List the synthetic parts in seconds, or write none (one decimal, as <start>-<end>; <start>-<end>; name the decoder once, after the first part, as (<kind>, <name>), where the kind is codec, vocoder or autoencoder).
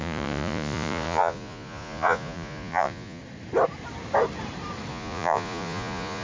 0.0-3.2 (vocoder, Vocos); 4.9-6.2